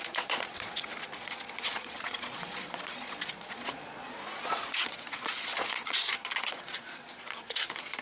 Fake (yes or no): yes